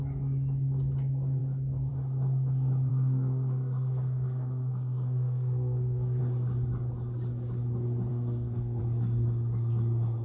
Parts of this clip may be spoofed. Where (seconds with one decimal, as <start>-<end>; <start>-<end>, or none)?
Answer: 2.9-6.2; 8.1-8.8